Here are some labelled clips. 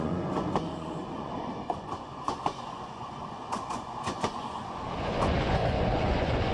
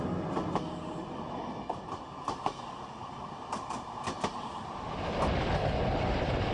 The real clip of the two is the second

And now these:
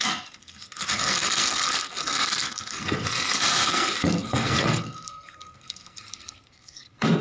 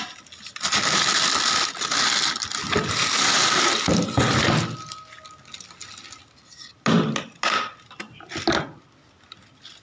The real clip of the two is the second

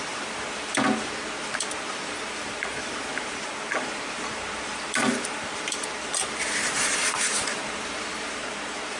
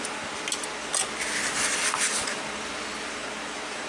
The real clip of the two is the second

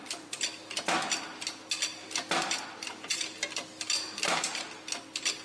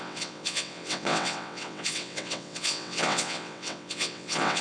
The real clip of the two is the first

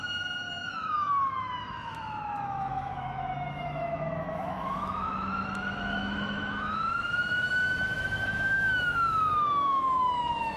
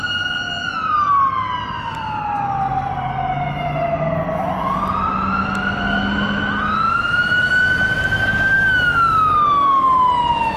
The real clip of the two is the second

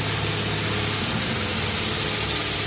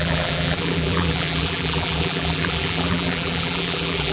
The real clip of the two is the first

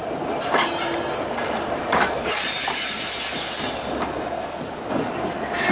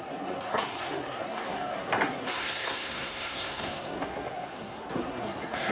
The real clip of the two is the first